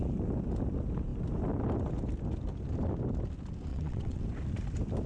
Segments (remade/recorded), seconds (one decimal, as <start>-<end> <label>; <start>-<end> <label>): 0.0-3.7 recorded; 3.7-4.2 remade; 4.2-5.1 recorded